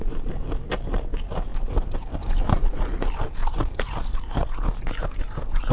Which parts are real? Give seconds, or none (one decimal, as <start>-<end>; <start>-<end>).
0.0-3.4; 3.9-5.7